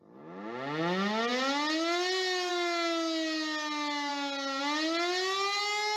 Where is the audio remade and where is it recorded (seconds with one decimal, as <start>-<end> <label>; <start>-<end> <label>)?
0.0-6.0 recorded

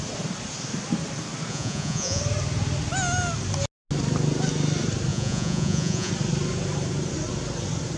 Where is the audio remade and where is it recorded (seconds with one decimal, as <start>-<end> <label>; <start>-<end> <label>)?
0.0-1.5 recorded; 1.5-2.2 remade; 2.2-5.1 recorded; 5.1-6.1 remade; 6.1-8.0 recorded